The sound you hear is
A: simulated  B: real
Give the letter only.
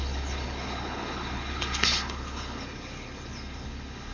A